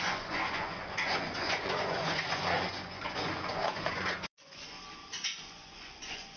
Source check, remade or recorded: remade